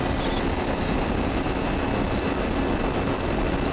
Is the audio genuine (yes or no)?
yes